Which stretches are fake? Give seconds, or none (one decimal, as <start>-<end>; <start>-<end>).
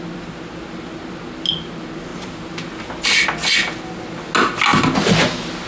none